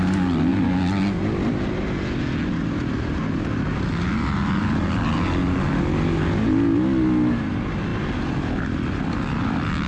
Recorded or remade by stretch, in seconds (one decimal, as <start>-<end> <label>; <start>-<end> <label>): 0.0-9.9 recorded